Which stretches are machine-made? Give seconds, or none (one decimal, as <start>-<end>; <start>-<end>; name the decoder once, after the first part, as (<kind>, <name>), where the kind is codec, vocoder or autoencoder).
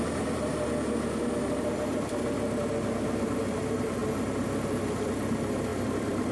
0.0-0.5 (vocoder, BigVGAN v2); 3.4-4.0; 4.8-6.3